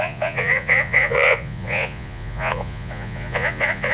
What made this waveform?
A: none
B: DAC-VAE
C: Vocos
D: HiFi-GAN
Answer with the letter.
C